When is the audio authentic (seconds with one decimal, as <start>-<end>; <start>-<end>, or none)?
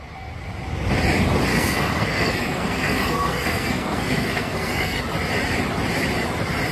0.0-1.5; 5.0-6.7